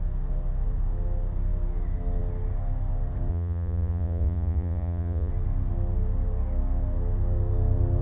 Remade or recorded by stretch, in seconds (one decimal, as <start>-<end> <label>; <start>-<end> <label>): 0.0-3.3 recorded; 3.3-5.3 remade; 5.3-8.0 recorded